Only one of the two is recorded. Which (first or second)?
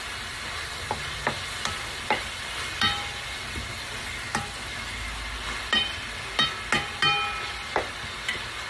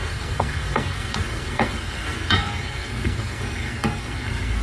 first